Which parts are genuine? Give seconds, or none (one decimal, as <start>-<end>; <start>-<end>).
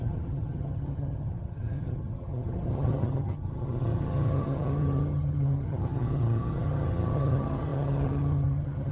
none